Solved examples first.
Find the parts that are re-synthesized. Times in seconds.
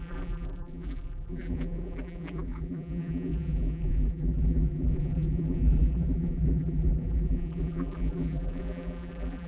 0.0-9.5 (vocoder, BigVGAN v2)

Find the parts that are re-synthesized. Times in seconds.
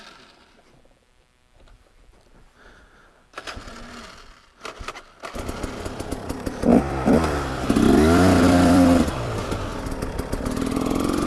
0.0-3.4 (vocoder, BigVGAN v2); 3.9-9.7; 10.4-11.3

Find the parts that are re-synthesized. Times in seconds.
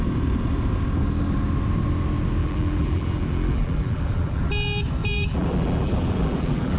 2.4-4.4 (vocoder, BigVGAN v2); 5.0-6.8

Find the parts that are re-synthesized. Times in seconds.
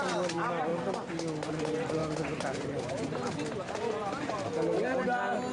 none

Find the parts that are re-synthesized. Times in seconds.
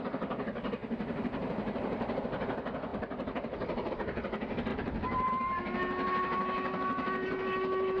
0.8-2.2 (vocoder, BigVGAN v2); 4.7-5.3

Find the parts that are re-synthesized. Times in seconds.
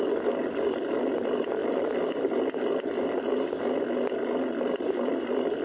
none